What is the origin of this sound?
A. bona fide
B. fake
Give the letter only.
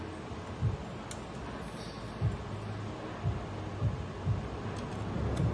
A